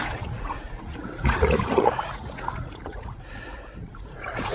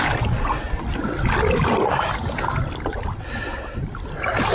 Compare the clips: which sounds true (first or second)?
second